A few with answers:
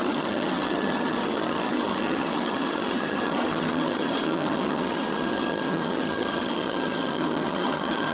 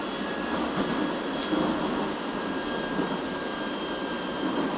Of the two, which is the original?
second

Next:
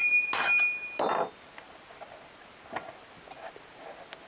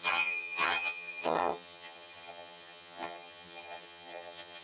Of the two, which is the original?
first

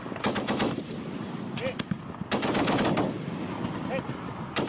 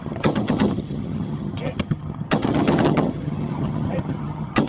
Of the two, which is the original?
first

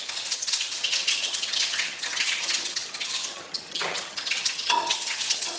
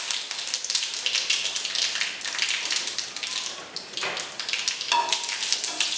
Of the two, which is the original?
second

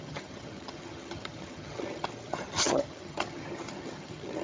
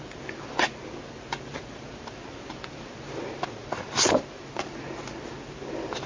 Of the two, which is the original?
second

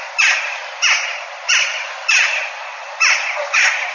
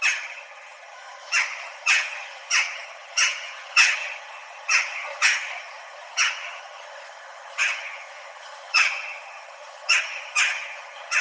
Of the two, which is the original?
first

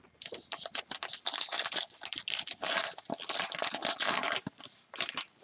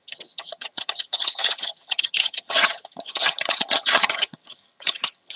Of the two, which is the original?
first